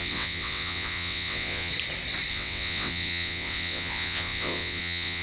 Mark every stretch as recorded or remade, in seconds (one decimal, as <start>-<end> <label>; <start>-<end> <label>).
0.0-1.7 remade; 1.7-2.3 recorded; 2.3-5.2 remade

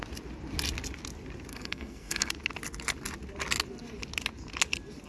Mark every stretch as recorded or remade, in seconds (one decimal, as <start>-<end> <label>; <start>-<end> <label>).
0.0-1.5 recorded; 1.5-2.3 remade; 2.3-5.1 recorded

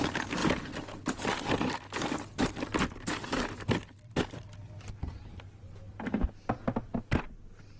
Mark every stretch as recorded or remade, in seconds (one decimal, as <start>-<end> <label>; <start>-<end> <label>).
0.0-7.8 recorded

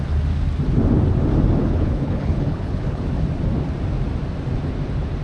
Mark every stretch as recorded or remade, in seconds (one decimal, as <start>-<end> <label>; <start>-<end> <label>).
0.0-1.6 recorded; 1.6-3.0 remade; 3.0-5.2 recorded

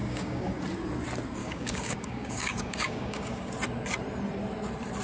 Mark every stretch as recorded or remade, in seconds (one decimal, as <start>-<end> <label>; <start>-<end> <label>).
0.0-0.5 remade; 0.5-1.4 recorded; 1.4-3.5 remade; 3.5-5.0 recorded